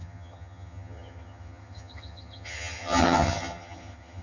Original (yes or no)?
no